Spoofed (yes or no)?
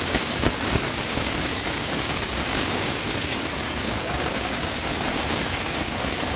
yes